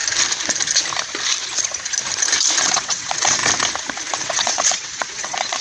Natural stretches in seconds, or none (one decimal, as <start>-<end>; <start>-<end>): 0.0-2.6; 3.4-4.2

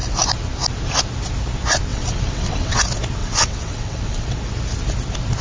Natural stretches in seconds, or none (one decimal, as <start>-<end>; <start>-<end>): 0.0-1.9; 2.8-3.2; 4.4-5.4

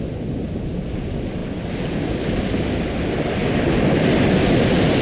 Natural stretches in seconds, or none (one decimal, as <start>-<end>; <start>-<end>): 0.0-5.0

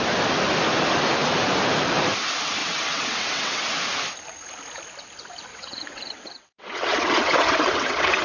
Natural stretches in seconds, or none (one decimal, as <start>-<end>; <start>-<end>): 0.0-2.6; 3.8-5.5

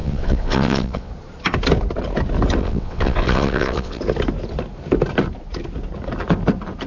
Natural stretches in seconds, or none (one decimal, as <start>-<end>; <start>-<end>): 1.1-2.6; 4.0-6.9